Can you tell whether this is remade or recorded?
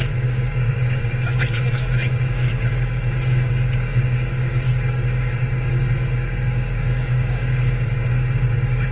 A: remade